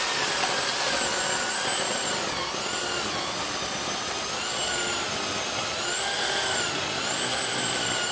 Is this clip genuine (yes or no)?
yes